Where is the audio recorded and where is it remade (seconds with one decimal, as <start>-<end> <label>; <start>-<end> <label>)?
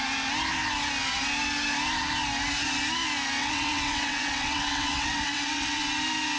0.0-3.4 recorded; 3.4-5.8 remade; 5.8-6.4 recorded